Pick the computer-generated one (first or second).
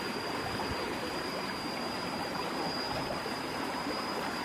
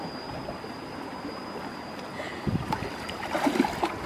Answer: first